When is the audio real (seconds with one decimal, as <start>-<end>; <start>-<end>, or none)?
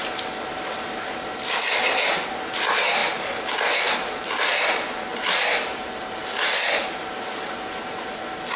0.0-8.6